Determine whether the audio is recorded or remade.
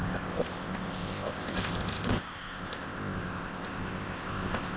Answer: remade